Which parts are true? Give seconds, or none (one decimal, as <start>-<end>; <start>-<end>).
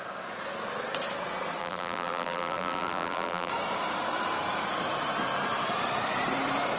0.0-1.6; 3.5-6.8